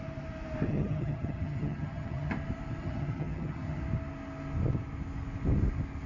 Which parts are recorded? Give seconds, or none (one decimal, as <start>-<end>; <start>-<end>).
0.0-0.7; 2.3-2.8; 3.8-6.1

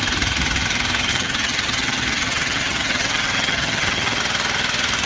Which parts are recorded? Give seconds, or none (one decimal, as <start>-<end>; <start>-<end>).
0.0-1.1; 4.2-5.1

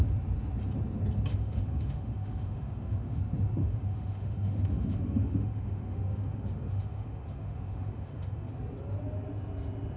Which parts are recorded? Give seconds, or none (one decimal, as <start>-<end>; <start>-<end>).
0.0-1.3; 3.2-3.6; 8.5-10.0

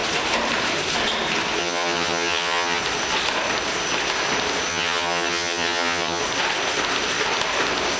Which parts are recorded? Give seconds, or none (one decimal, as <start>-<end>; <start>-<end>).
0.0-1.6; 2.8-4.7; 6.2-8.0

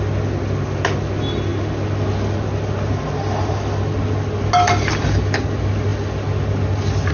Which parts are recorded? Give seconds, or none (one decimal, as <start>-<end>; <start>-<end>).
0.0-7.1

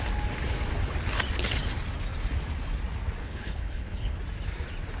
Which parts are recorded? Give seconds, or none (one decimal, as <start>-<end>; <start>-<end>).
0.0-3.2; 4.2-5.0

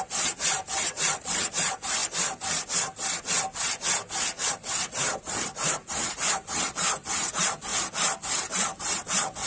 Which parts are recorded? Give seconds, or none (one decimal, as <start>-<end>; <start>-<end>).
2.0-4.5; 7.7-8.3

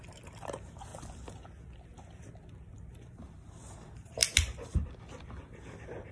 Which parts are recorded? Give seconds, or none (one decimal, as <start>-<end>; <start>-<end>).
0.9-2.9; 4.2-6.1